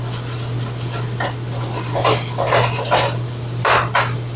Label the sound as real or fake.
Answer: real